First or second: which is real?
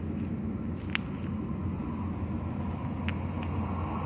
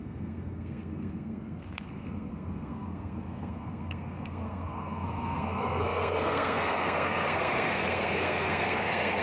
first